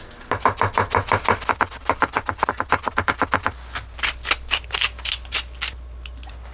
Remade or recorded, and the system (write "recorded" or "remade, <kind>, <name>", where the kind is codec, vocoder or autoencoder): recorded